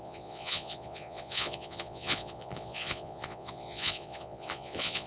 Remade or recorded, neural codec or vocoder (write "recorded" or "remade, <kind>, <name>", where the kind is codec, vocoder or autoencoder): remade, vocoder, Vocos